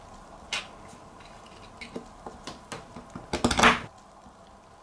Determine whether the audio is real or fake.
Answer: real